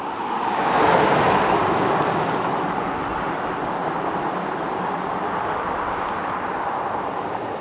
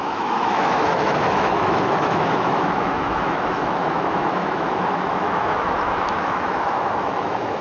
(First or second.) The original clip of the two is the first